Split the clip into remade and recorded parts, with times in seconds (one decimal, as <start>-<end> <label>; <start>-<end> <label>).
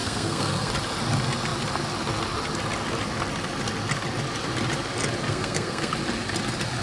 0.0-0.7 remade; 0.7-5.3 recorded; 5.3-5.9 remade; 5.9-6.8 recorded